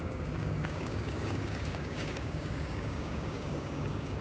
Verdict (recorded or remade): remade